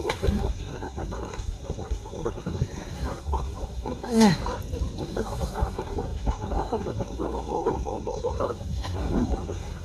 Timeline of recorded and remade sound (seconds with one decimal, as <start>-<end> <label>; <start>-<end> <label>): 0.0-4.4 remade; 4.4-5.0 recorded; 5.0-9.8 remade